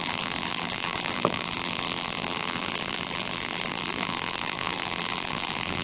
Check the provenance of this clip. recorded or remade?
remade